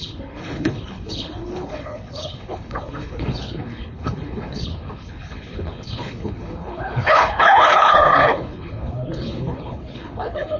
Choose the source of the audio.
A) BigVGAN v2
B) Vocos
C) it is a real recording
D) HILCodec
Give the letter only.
D